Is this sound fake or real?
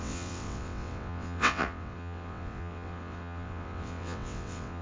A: fake